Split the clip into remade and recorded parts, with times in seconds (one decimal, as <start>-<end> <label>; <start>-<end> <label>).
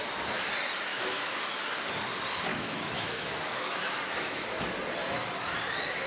0.0-0.9 recorded; 0.9-1.4 remade; 1.4-2.5 recorded; 2.5-4.6 remade; 4.6-6.1 recorded